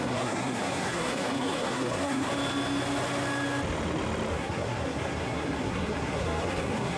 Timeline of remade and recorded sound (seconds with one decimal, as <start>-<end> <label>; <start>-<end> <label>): 0.0-2.3 remade; 2.3-4.3 recorded; 4.3-7.0 remade